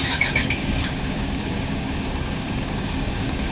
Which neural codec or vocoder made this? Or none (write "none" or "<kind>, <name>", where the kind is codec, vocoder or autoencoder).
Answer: codec, DAC